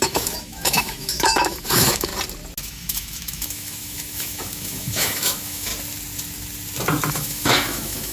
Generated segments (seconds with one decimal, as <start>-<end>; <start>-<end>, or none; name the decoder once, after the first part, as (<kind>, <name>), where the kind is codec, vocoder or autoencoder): 0.0-2.1 (autoencoder, DAC-VAE); 2.6-5.7; 7.1-8.1